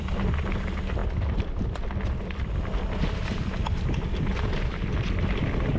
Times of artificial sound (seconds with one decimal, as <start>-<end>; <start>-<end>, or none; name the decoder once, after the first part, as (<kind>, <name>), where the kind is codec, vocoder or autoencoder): none